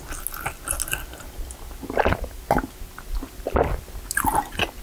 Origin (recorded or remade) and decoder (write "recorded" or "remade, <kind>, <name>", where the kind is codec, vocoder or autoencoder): recorded